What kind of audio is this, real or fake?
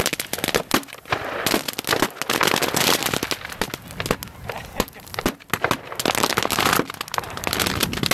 real